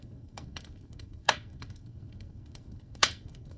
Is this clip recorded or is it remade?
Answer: remade